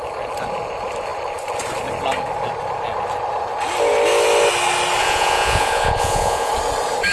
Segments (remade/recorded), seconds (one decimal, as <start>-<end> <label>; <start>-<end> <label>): 0.0-5.0 recorded; 5.0-6.5 remade; 6.5-7.1 recorded